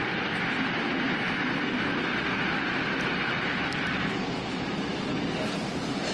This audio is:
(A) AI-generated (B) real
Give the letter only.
B